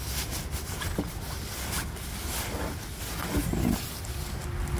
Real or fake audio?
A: real